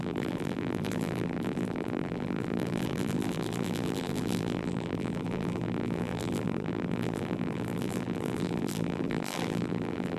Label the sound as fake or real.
fake